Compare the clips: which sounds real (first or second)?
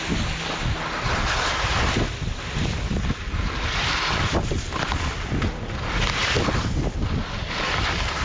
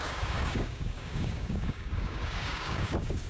first